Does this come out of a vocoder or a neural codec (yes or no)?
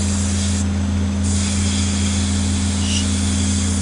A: no